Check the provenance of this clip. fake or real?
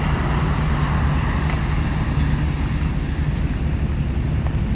real